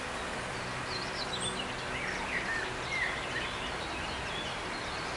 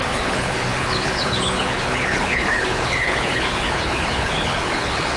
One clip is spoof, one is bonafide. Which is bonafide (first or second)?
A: first